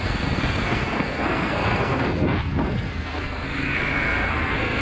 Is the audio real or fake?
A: fake